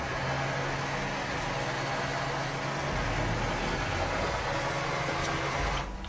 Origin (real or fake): real